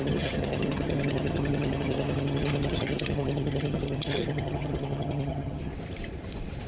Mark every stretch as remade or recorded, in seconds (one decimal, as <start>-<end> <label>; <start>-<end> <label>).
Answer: 0.0-5.7 remade; 5.7-6.7 recorded